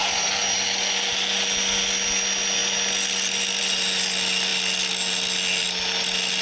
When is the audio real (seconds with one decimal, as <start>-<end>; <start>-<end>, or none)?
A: 0.0-6.4